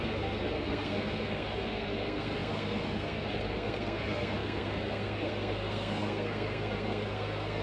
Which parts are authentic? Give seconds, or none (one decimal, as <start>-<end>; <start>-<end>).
none